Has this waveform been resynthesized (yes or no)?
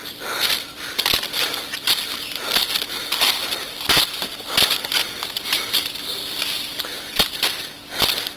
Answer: no